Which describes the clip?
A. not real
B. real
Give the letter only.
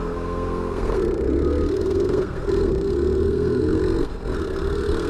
A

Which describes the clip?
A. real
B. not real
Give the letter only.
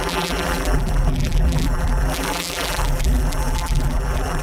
B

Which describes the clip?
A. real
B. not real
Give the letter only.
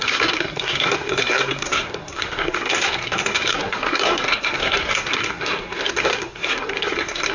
B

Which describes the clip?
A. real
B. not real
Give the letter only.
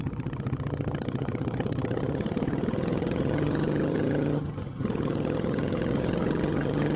B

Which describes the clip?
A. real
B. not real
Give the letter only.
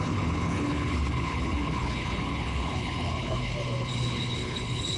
B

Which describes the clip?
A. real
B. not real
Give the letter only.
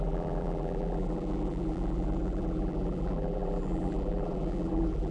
B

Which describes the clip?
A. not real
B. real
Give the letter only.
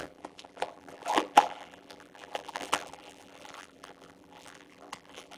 A